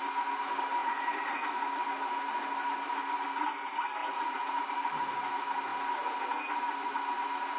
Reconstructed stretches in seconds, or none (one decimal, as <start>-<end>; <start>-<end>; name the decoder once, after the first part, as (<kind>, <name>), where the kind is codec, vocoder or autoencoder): 0.8-1.4 (vocoder, Vocos); 4.0-4.5